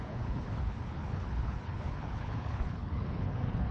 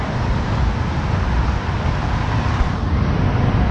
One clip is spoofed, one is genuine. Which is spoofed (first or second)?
first